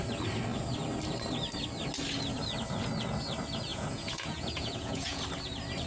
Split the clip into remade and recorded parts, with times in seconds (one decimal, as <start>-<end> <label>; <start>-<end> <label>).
0.0-3.7 recorded; 3.7-5.2 remade; 5.2-5.9 recorded

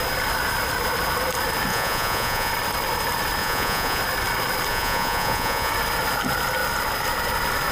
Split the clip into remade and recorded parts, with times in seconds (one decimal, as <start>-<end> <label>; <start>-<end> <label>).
0.0-1.7 recorded; 1.7-2.5 remade; 2.5-3.4 recorded; 3.4-4.0 remade; 4.0-4.7 recorded; 4.7-5.7 remade; 5.7-7.7 recorded